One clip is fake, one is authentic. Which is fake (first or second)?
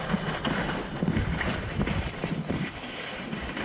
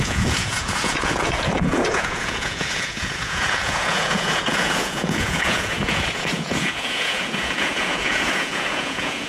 second